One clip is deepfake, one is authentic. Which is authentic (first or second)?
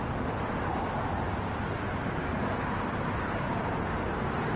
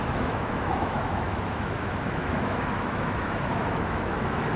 first